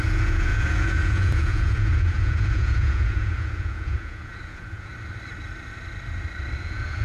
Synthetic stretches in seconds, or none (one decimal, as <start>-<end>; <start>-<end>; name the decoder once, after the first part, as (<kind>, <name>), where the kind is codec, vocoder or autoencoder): 0.0-4.9 (vocoder, Vocos); 6.6-7.0